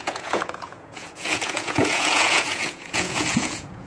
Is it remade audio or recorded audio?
remade